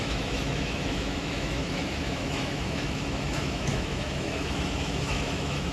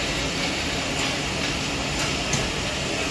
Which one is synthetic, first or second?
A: first